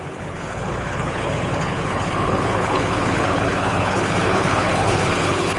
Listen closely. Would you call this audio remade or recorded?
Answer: remade